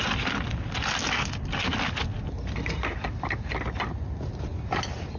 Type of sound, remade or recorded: recorded